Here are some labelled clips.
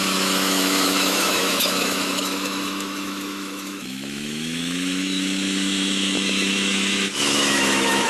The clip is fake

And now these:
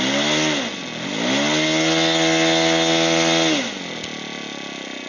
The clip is real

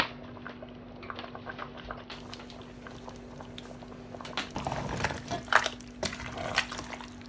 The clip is real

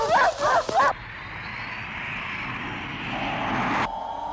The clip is real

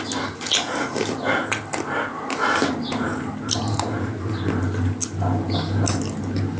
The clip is real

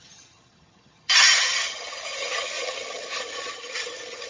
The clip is fake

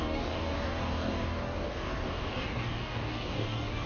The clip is fake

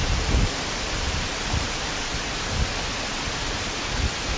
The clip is real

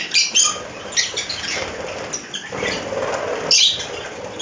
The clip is real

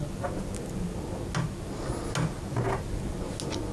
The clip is real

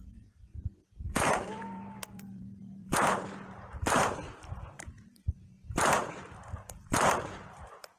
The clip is fake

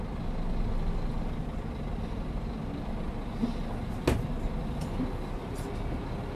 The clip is real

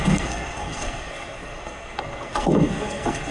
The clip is fake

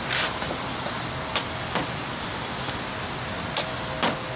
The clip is real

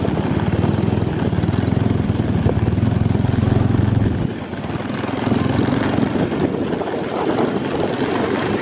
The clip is real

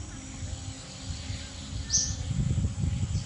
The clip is real